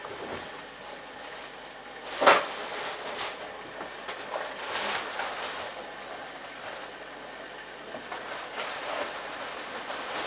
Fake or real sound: real